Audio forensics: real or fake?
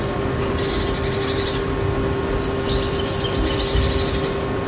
real